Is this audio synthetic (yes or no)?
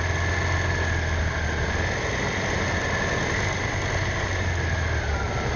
no